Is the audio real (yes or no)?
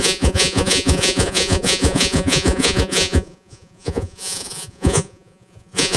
no